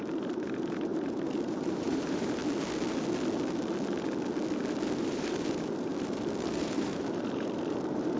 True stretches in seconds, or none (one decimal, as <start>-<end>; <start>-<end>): 2.4-5.0; 5.9-6.6